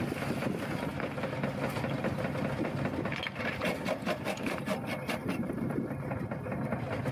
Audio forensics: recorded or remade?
recorded